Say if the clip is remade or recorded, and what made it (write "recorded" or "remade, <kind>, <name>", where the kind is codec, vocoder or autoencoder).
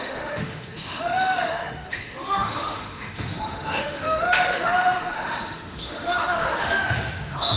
remade, autoencoder, DAC-VAE